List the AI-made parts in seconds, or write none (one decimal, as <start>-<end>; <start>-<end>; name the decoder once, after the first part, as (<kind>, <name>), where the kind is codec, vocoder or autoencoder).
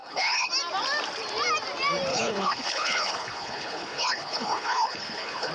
0.0-0.5 (codec, HILCodec); 2.1-5.5